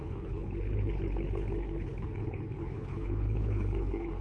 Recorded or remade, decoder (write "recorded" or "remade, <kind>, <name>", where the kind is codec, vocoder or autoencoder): remade, codec, HILCodec